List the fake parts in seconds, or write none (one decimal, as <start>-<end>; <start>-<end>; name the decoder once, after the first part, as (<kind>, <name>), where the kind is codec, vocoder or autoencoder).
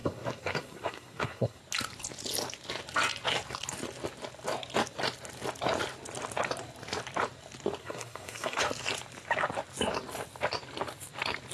0.0-1.6 (codec, SNAC); 7.8-8.6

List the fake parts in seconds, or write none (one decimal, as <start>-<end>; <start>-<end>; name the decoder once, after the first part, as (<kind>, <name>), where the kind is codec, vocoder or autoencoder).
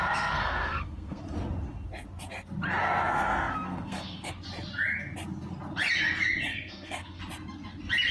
0.0-1.2 (codec, SNAC); 2.8-4.3; 6.5-7.2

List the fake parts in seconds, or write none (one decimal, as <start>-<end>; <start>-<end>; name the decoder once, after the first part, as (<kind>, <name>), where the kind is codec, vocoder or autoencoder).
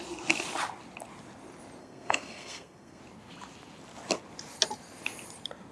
1.8-3.0 (codec, SNAC)